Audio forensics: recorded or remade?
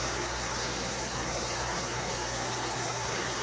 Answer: remade